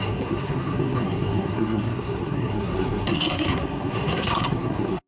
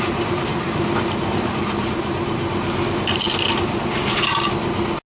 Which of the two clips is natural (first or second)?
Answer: second